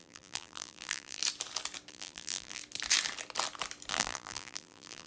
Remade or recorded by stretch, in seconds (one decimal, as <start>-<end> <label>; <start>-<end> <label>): 0.0-1.2 remade; 1.2-1.9 recorded; 1.9-2.6 remade; 2.6-3.9 recorded; 3.9-5.1 remade